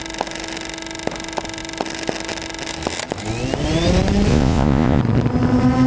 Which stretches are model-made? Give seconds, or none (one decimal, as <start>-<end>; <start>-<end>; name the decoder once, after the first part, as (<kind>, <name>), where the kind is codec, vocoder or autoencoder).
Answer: 4.3-5.0 (vocoder, Vocos)